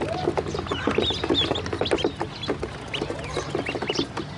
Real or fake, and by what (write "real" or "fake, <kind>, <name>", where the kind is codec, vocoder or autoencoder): real